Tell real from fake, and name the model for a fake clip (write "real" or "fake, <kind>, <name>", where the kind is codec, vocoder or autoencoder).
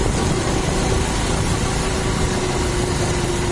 real